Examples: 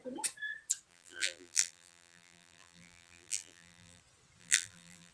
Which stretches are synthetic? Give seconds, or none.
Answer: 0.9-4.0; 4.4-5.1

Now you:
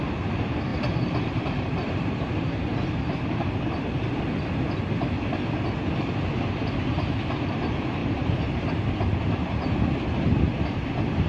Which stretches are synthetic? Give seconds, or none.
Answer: 0.7-4.2; 8.0-9.5

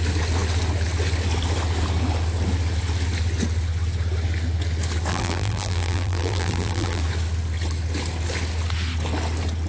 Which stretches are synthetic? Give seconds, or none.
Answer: 5.1-7.0